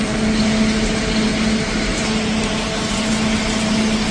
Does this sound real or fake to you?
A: real